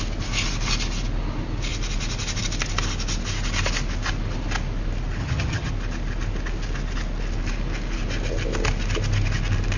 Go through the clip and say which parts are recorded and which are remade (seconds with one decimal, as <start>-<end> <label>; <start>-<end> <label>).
0.0-5.2 recorded; 5.2-5.7 remade; 5.7-9.8 recorded

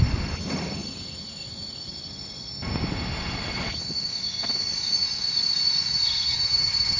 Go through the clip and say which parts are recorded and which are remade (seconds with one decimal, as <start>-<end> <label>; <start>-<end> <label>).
0.0-5.9 recorded; 5.9-7.0 remade